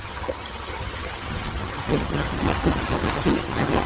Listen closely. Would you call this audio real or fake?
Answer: fake